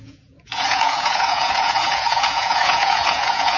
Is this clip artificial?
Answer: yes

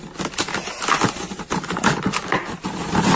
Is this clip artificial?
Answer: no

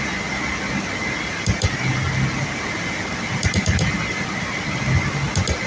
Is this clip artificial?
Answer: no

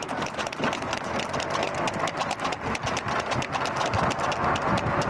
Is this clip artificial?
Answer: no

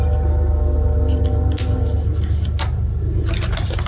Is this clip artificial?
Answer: no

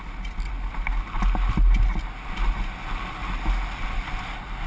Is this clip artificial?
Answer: no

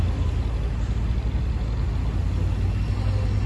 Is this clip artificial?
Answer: no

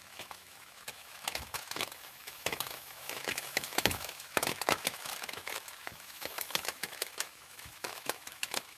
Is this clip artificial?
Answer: yes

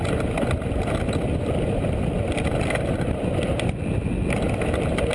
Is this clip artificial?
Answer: no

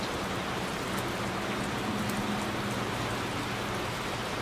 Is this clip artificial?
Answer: no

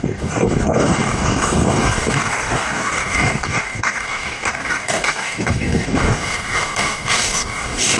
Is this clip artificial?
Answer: yes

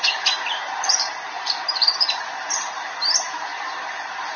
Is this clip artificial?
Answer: yes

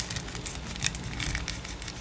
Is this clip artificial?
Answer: no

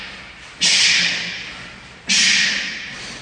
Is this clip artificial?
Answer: no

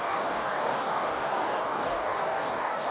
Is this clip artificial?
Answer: yes